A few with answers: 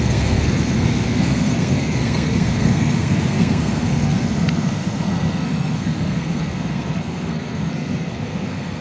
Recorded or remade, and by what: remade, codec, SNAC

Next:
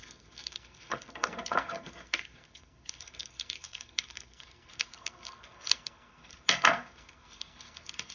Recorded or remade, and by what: remade, codec, SNAC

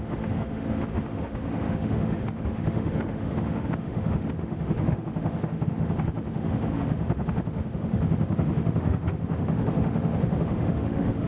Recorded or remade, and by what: remade, autoencoder, DAC-VAE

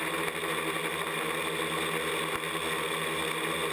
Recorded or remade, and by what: recorded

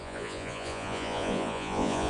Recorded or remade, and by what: remade, vocoder, Vocos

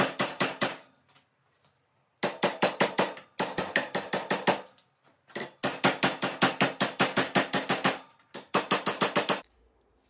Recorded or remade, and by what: recorded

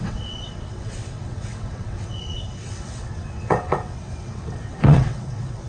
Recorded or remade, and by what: remade, vocoder, WaveNeXt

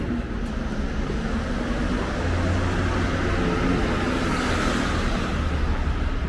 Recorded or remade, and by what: recorded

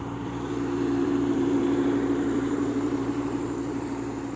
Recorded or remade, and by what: remade, vocoder, BigVGAN v2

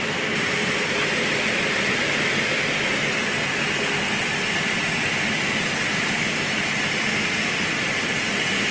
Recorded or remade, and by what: recorded